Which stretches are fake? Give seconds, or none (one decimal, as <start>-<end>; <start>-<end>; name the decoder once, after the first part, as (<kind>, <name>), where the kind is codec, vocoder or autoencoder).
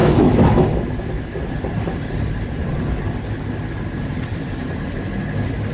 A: 0.0-1.5 (autoencoder, DAC-VAE)